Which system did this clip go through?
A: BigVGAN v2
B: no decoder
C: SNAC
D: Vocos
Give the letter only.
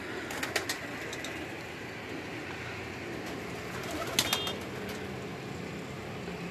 B